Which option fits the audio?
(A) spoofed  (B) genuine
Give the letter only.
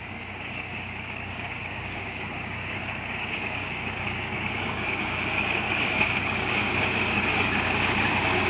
A